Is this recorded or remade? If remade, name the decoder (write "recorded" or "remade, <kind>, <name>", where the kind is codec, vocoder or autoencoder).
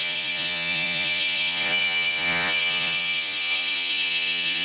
remade, vocoder, Vocos